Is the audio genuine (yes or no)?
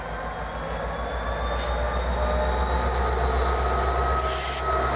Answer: yes